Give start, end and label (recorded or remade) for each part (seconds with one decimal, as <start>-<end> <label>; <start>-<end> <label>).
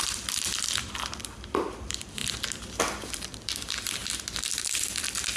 0.0-2.2 remade; 2.2-2.8 recorded; 2.8-4.0 remade; 4.0-4.6 recorded; 4.6-5.4 remade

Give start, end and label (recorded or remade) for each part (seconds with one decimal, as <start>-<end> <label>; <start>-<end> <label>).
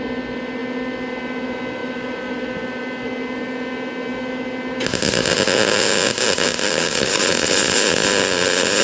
0.0-1.8 recorded; 1.8-2.8 remade; 2.8-6.5 recorded; 6.5-7.2 remade; 7.2-8.0 recorded; 8.0-8.8 remade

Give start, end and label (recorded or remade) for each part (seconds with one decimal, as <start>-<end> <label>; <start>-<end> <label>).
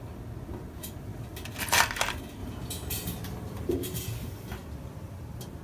0.0-4.6 recorded; 4.6-5.6 remade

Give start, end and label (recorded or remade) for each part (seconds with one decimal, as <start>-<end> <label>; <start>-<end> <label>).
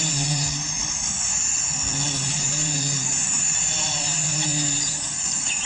0.0-0.8 remade; 0.8-2.4 recorded; 2.4-5.7 remade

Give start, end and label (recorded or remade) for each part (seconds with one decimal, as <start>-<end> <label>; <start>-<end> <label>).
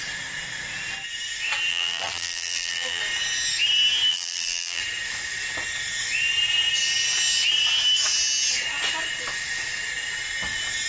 0.0-1.7 recorded; 1.7-3.0 remade; 3.0-4.1 recorded; 4.1-4.8 remade; 4.8-10.9 recorded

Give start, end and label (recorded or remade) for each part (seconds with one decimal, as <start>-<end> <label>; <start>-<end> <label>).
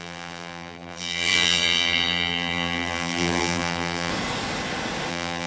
0.0-4.1 remade; 4.1-5.1 recorded; 5.1-5.5 remade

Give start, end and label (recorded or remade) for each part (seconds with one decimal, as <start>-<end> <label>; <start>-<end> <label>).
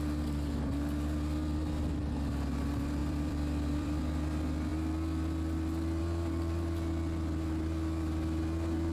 0.0-3.0 recorded; 3.0-4.0 remade; 4.0-8.9 recorded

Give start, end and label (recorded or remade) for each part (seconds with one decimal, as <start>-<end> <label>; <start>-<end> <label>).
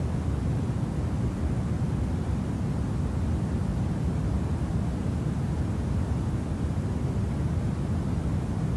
0.0-3.7 recorded; 3.7-6.3 remade; 6.3-8.8 recorded